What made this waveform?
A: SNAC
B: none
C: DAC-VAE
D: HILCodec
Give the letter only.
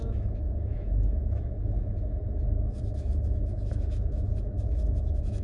C